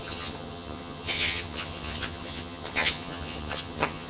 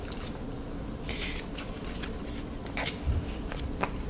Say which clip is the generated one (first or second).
first